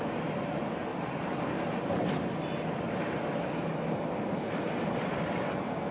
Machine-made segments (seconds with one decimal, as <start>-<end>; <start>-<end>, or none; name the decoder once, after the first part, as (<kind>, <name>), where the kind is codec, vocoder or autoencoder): none